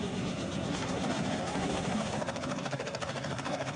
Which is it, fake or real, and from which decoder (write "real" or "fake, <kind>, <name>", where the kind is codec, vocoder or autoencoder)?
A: fake, codec, SNAC